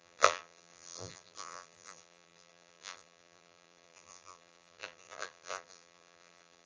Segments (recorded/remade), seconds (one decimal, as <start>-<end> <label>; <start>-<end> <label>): 0.0-6.7 remade